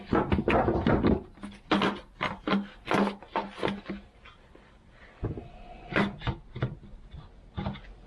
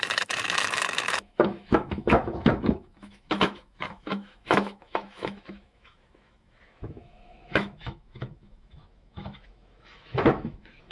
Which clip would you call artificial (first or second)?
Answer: second